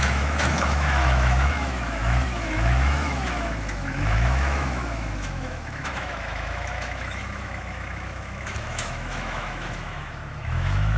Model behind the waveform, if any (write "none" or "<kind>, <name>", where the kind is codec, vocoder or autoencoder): autoencoder, DAC-VAE